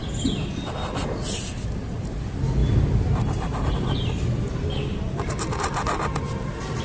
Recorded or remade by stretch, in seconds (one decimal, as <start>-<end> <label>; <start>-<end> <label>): 0.0-2.6 recorded; 2.6-6.8 remade